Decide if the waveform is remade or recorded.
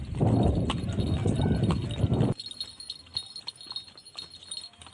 recorded